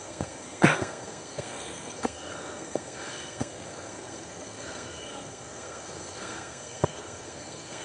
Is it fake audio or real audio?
fake